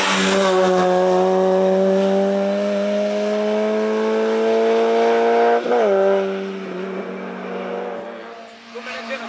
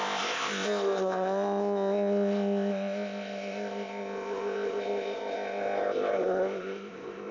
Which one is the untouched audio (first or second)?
first